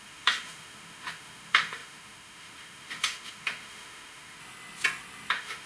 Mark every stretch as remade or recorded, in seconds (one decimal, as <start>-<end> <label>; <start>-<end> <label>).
0.0-4.4 remade; 4.4-5.3 recorded; 5.3-5.7 remade